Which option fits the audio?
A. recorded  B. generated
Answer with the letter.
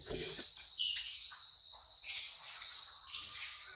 A